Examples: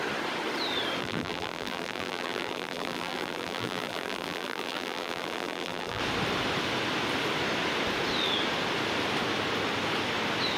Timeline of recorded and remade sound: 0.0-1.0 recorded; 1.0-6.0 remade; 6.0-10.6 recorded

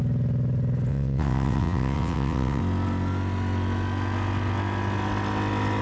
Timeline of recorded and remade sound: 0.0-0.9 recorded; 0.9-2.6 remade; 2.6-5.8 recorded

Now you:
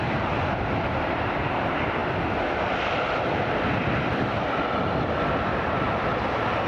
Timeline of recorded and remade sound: 0.0-2.0 remade; 2.0-5.4 recorded; 5.4-6.7 remade

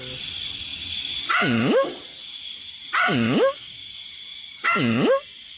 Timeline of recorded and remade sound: 0.0-5.6 recorded